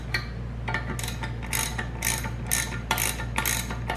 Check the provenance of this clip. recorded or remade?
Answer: recorded